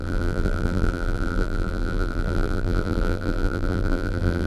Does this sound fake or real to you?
fake